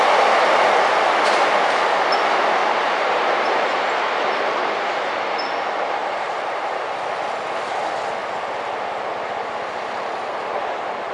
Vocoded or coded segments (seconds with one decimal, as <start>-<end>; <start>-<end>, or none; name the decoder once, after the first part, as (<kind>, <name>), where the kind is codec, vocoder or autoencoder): 2.6-4.3 (vocoder, BigVGAN v2); 6.0-6.9